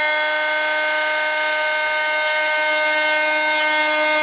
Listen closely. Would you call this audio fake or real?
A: real